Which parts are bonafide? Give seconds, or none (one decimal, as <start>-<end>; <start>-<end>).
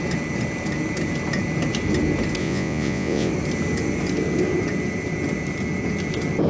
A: 0.0-2.4; 3.3-6.5